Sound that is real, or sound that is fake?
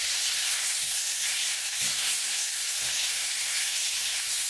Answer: fake